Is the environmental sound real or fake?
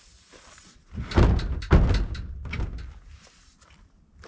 real